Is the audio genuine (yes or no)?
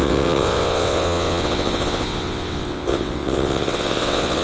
no